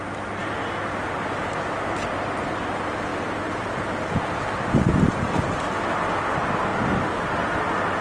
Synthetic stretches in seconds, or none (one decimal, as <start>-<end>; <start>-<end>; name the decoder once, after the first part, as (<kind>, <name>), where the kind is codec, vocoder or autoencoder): none